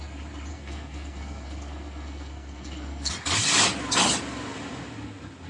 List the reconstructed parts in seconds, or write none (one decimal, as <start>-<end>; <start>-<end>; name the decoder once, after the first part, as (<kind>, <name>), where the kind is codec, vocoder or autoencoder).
0.5-3.1 (codec, SNAC)